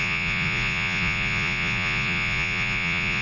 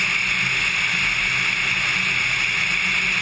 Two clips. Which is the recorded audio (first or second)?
second